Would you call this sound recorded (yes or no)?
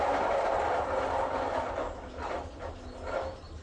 yes